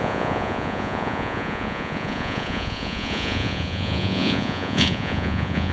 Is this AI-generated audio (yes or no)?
yes